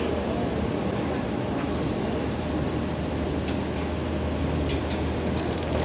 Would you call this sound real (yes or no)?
yes